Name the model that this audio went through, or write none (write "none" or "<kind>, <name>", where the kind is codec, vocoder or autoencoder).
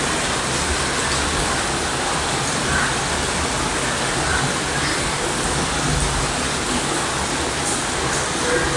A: none